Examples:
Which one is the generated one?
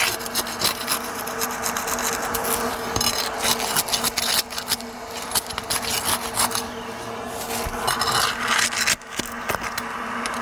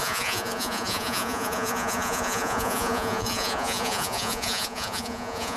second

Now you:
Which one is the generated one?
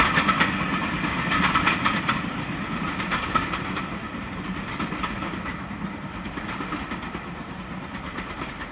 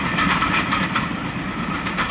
first